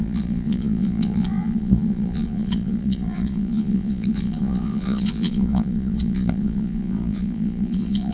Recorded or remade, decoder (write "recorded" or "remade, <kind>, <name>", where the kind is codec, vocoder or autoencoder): remade, vocoder, Vocos